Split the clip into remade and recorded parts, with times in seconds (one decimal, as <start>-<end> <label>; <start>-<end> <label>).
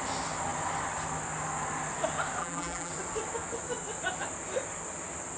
0.0-2.4 recorded; 2.4-2.9 remade; 2.9-5.4 recorded